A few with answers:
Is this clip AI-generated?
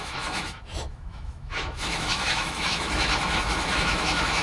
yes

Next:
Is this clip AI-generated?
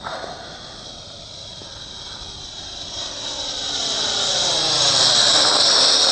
no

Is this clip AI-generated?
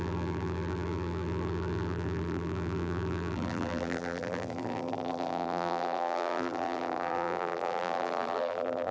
yes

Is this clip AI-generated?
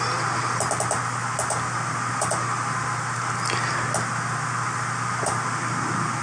no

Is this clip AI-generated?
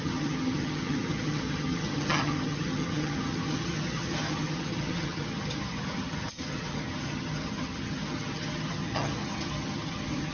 yes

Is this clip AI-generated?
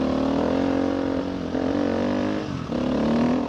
no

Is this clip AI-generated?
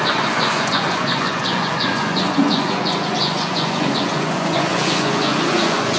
yes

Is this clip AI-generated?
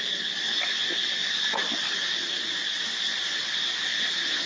no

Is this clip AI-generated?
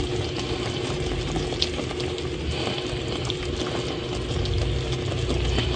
no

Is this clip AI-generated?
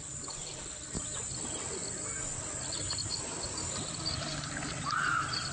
no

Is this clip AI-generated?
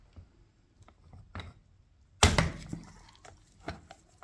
no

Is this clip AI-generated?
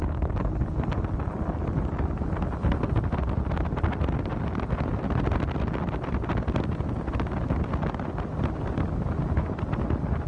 no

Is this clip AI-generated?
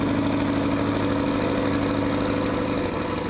no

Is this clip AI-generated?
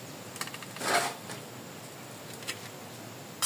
no